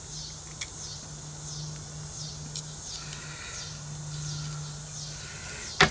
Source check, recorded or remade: recorded